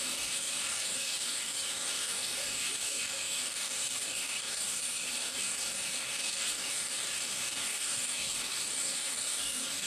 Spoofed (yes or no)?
yes